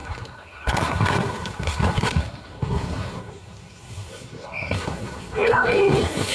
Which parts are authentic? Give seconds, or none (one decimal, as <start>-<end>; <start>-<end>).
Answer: none